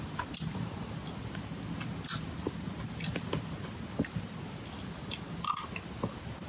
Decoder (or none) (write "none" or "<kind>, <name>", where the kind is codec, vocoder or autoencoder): none